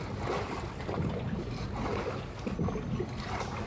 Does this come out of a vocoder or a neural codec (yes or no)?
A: no